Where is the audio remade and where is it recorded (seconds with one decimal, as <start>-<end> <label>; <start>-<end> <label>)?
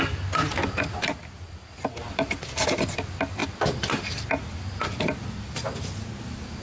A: 0.0-6.6 recorded